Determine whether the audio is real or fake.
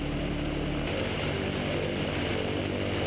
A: real